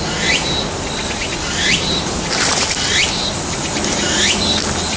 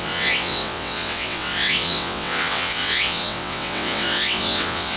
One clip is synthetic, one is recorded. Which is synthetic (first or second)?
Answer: second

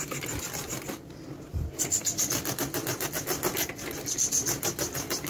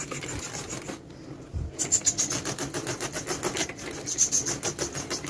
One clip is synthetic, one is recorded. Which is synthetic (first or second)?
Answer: first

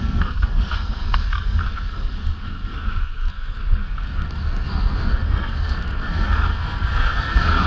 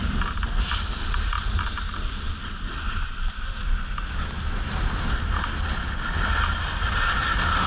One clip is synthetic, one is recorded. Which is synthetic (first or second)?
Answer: first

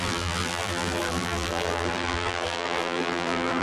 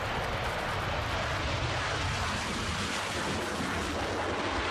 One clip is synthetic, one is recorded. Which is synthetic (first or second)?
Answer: first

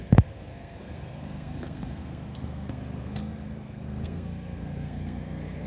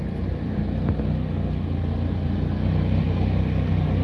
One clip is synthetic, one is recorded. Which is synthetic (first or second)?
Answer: first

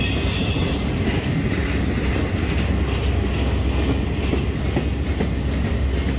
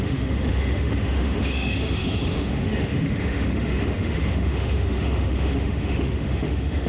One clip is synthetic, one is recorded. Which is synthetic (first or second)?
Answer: second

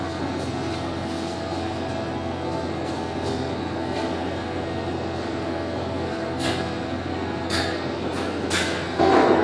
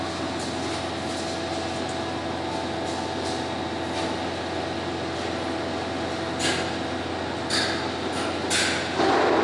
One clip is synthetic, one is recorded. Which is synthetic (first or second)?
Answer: first